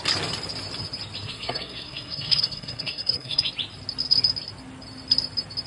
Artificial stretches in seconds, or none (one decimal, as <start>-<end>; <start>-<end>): 1.2-3.5